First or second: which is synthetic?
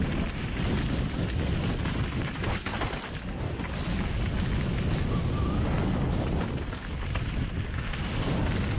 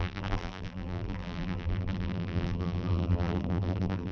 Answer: second